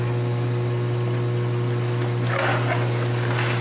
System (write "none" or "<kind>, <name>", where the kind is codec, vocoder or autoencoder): none